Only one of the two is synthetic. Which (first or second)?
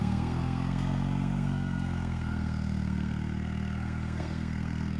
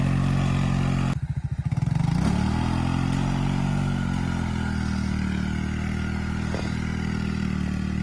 first